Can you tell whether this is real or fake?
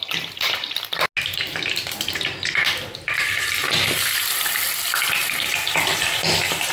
real